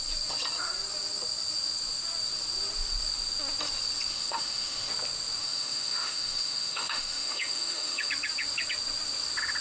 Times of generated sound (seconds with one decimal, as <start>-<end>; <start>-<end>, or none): 4.1-4.9; 5.4-8.1